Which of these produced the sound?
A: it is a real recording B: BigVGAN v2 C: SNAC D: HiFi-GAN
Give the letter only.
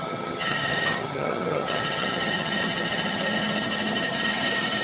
D